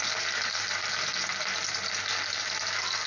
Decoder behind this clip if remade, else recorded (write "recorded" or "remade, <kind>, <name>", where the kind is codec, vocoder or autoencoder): recorded